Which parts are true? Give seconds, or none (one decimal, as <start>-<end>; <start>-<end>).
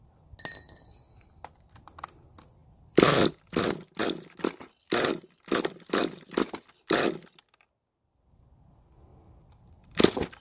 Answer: 0.0-10.4